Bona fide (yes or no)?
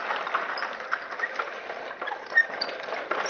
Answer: yes